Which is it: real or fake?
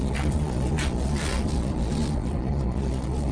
fake